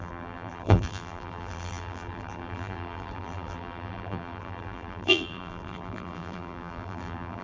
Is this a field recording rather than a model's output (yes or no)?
no